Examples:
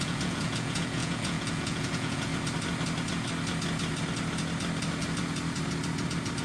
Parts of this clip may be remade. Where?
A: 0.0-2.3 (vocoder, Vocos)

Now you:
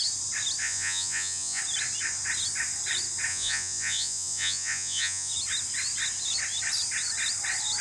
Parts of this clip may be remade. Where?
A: 0.6-1.6 (vocoder, Vocos); 3.3-5.3

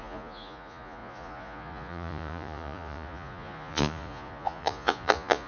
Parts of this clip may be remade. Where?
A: 0.0-5.5 (vocoder, Vocos)

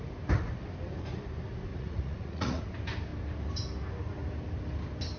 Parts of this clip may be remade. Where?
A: 1.7-2.6 (vocoder, Vocos)

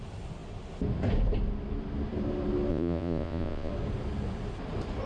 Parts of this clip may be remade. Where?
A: 2.7-3.7 (vocoder, Vocos)